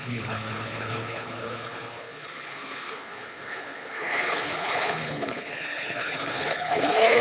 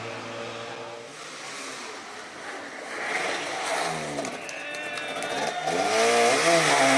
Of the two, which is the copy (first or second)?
first